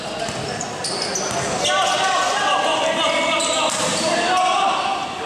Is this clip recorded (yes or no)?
yes